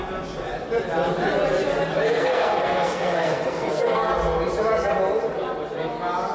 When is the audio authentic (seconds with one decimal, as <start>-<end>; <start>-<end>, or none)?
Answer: 0.0-2.0; 4.1-6.3